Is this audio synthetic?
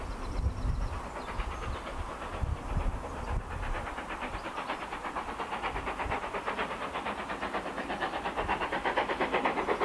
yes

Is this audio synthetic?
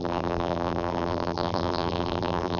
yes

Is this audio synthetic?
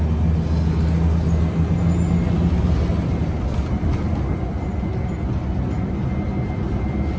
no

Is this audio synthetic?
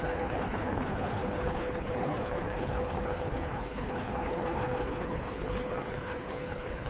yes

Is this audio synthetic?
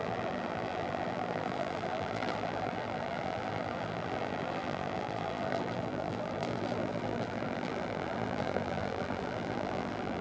yes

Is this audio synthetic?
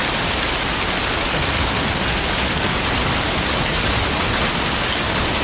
no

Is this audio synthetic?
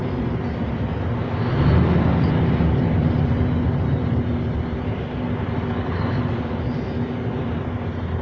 no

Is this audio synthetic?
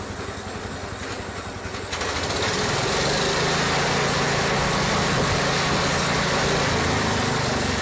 no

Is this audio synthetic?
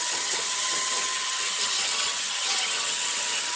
yes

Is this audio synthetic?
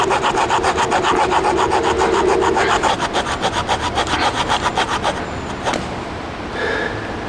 no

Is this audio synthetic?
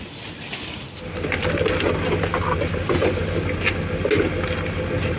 no